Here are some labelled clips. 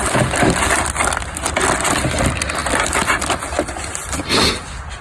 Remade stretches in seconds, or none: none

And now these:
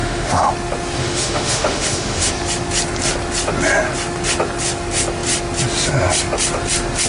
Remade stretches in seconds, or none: 0.0-0.5 (autoencoder, DAC-VAE); 1.0-2.3